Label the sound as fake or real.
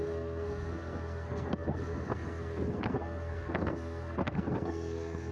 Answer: fake